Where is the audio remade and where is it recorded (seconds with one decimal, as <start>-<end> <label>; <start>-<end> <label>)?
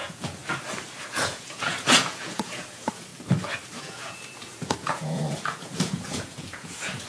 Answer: 0.0-0.4 remade; 0.4-1.0 recorded; 1.0-3.1 remade; 3.1-3.8 recorded; 3.8-7.1 remade